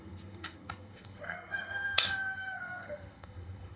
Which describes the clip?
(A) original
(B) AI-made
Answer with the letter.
B